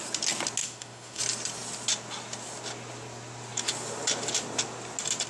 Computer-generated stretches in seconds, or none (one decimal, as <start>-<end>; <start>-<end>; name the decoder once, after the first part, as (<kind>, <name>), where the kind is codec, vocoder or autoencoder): 0.6-1.2 (autoencoder, DAC-VAE)